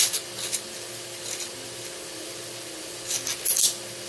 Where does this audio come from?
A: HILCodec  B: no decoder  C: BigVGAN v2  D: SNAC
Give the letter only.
B